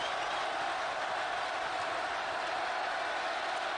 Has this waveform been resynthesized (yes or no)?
no